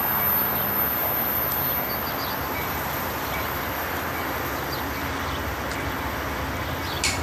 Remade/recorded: recorded